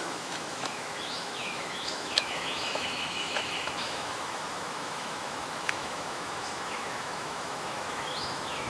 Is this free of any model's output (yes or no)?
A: no